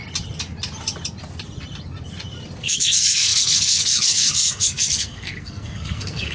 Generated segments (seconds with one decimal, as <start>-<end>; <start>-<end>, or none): 2.6-6.3

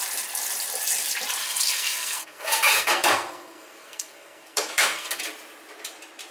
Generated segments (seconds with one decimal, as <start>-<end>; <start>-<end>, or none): 1.4-5.2

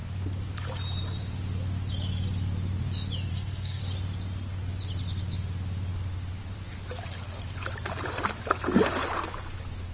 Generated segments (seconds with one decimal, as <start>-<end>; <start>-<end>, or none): 3.3-3.8